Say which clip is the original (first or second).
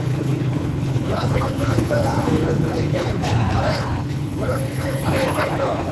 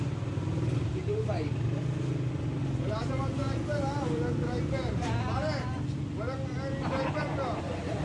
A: second